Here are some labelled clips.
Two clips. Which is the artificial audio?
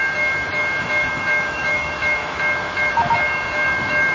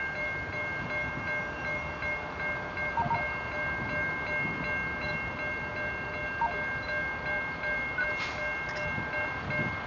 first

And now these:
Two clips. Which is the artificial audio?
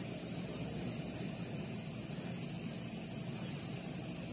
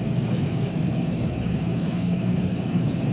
second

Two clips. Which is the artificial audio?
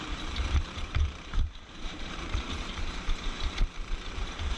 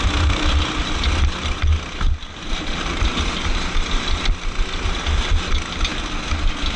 first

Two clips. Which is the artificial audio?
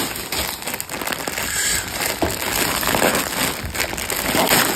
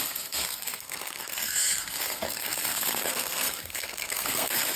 second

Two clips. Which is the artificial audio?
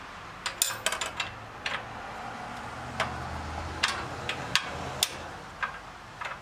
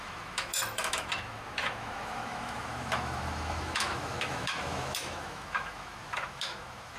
second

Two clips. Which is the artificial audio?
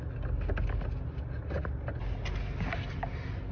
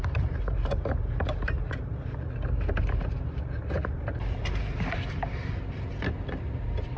second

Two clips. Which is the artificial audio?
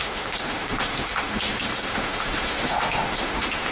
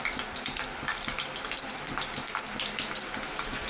first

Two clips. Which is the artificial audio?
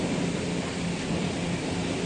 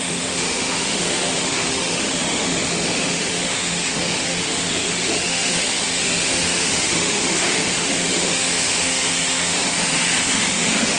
second